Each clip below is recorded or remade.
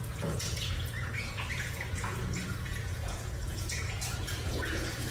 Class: remade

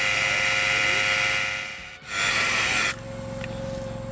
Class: recorded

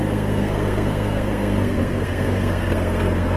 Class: remade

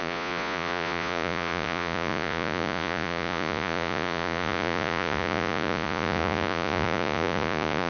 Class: remade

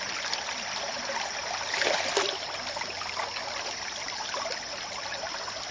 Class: recorded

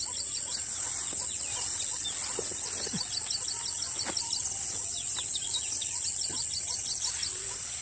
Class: recorded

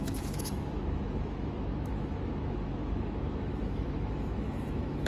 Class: remade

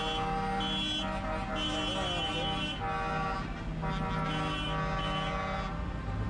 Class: recorded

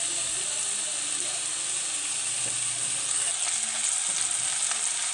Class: recorded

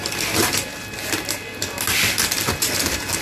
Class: recorded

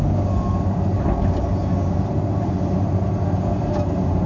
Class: recorded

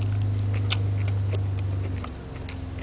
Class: recorded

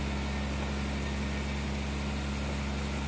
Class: recorded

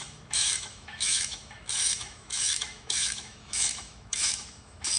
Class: remade